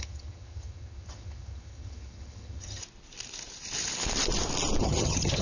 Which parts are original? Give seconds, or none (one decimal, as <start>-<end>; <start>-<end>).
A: 2.8-4.8